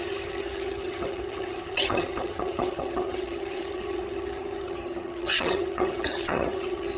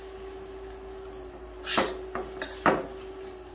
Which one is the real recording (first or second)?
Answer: second